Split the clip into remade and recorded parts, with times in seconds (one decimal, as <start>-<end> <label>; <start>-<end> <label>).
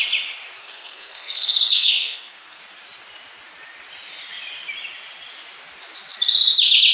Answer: 0.0-0.6 recorded; 0.6-2.6 remade; 2.6-6.9 recorded